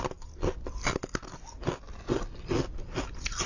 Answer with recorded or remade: recorded